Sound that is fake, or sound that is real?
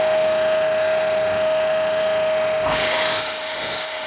fake